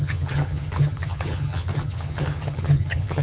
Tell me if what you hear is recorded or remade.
remade